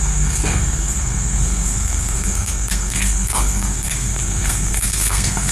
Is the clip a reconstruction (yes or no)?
yes